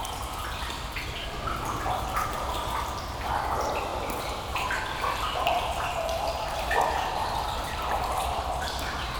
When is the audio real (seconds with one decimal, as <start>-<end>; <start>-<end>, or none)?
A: 0.0-9.2